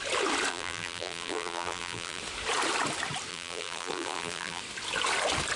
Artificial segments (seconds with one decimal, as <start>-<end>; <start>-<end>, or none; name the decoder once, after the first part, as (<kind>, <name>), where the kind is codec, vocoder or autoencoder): 0.5-2.2 (vocoder, BigVGAN v2); 3.3-4.6